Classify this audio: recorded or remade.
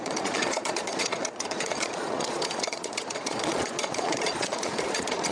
remade